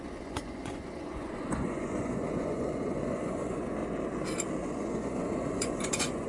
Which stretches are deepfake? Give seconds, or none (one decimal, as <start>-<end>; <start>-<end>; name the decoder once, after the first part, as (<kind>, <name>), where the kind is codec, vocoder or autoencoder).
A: 0.0-3.8 (vocoder, Vocos); 4.6-6.3